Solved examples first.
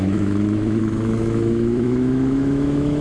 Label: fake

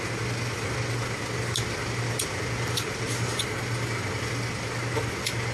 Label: real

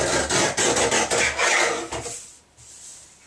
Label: real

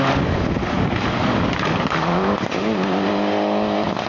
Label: real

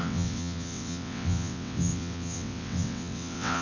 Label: fake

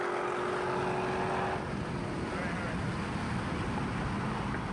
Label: real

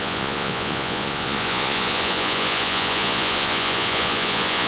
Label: fake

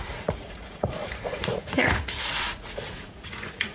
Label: fake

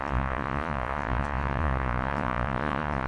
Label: fake